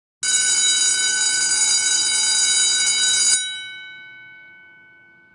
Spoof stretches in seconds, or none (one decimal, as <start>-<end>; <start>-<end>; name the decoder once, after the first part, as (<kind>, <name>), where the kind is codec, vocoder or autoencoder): none